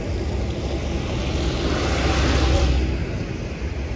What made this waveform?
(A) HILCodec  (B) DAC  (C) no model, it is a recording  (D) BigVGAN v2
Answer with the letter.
C